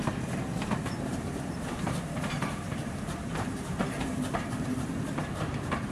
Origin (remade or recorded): remade